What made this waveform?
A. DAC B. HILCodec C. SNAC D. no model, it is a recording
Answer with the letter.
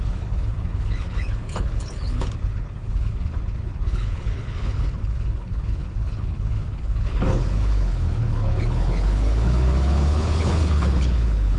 B